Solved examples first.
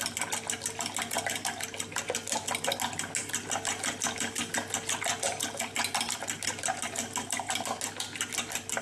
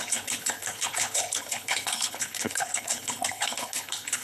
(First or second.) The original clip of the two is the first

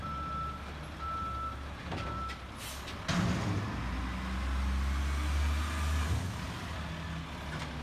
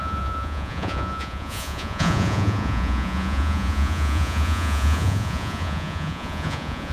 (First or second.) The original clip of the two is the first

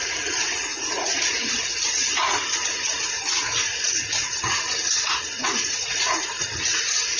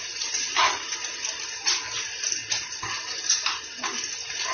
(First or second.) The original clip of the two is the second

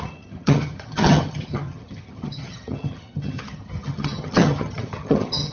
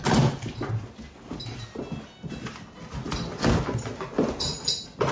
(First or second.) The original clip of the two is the second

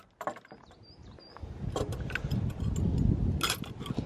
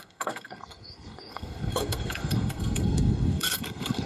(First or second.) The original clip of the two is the first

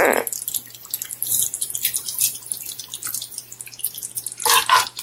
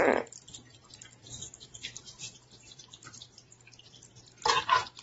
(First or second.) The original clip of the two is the first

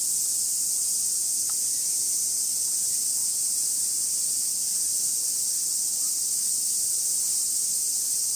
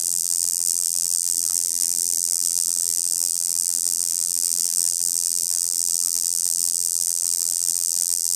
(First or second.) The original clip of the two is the first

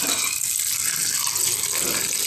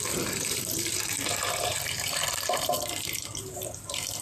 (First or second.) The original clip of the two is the first